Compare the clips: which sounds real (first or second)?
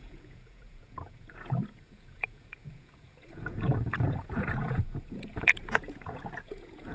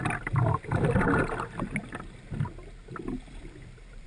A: second